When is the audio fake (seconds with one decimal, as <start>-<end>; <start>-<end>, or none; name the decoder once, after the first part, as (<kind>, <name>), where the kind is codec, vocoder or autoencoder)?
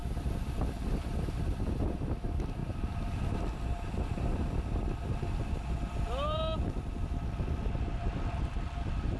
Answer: 1.0-9.2 (vocoder, BigVGAN v2)